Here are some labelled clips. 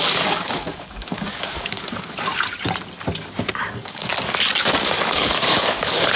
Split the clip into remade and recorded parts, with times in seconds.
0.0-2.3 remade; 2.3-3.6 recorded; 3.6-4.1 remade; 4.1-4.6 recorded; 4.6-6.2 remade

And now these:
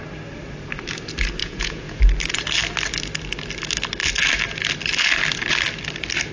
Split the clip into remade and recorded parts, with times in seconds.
0.0-1.4 recorded; 1.4-2.0 remade; 2.0-6.3 recorded